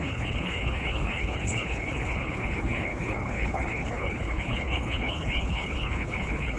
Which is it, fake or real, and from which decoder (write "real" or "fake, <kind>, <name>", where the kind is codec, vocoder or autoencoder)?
fake, codec, HILCodec